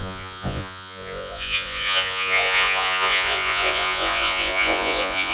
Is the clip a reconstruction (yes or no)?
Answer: yes